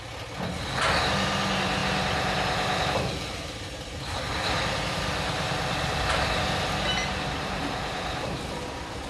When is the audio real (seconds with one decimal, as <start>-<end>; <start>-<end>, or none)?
0.0-9.1